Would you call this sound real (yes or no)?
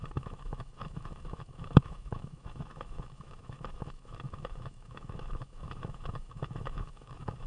no